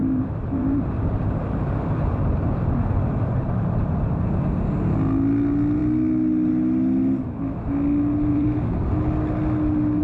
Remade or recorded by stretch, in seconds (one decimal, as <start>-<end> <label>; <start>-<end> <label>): 0.0-3.0 remade; 3.0-8.3 recorded; 8.3-8.9 remade; 8.9-10.0 recorded